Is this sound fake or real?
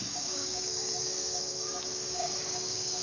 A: fake